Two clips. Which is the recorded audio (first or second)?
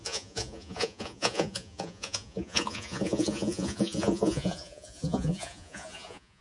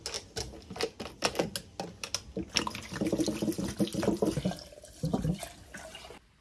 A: second